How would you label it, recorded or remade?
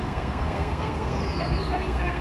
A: remade